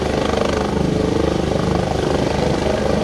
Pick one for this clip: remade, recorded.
recorded